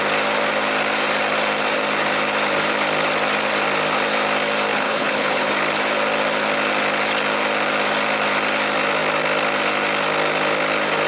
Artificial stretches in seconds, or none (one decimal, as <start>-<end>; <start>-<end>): 4.7-5.5

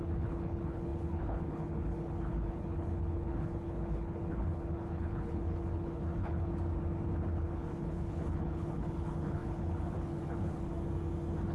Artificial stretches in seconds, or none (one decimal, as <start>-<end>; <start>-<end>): 0.0-6.5; 7.4-10.7

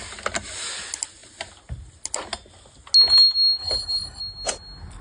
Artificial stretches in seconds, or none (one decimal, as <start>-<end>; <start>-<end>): 3.6-4.2

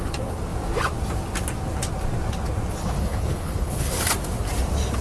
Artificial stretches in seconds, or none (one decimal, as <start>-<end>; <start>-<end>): 2.8-3.9

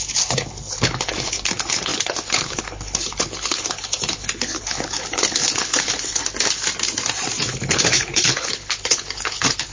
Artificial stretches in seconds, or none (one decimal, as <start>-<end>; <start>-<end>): 0.0-6.2; 7.4-9.7

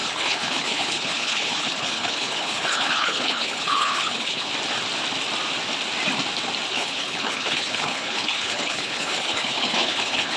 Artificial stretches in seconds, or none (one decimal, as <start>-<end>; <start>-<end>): 0.0-4.5; 6.7-10.4